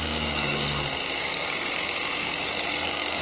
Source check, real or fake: fake